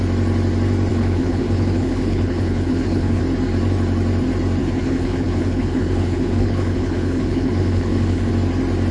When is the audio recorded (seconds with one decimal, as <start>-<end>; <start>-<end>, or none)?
0.0-0.9; 3.2-4.6; 8.3-8.9